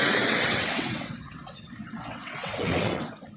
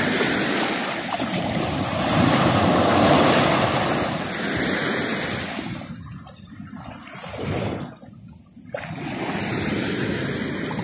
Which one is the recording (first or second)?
second